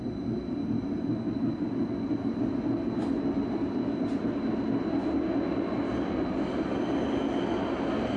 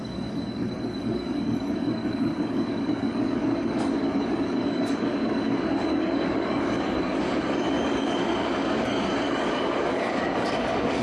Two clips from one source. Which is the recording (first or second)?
first